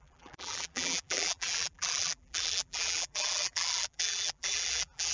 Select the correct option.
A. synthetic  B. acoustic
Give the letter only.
A